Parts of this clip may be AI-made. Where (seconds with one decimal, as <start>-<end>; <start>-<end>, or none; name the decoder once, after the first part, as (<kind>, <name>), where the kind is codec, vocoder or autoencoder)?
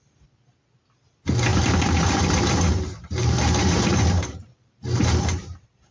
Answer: 1.5-5.0 (vocoder, BigVGAN v2)